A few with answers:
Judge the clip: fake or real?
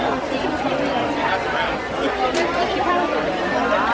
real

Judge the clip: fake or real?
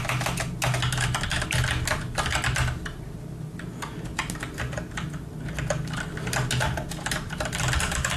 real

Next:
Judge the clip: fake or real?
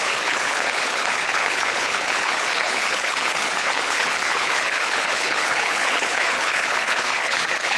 fake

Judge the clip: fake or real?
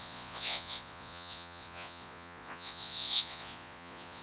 fake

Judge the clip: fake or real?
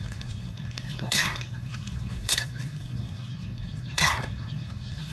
fake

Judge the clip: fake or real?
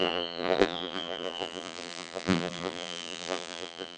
fake